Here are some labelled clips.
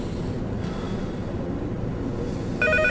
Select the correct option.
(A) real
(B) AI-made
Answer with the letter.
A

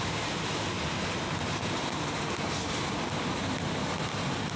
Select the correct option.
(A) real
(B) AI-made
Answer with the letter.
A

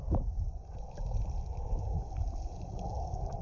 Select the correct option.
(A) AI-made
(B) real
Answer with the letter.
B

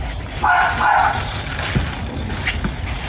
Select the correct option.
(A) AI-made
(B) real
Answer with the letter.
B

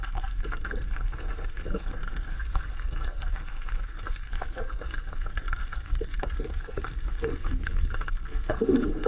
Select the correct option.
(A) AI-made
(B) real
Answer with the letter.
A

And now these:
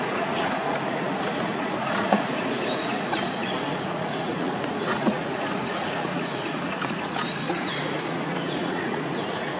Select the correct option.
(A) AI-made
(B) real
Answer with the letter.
A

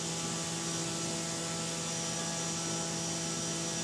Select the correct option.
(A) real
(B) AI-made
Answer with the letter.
A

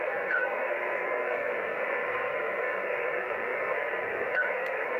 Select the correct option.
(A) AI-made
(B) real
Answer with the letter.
A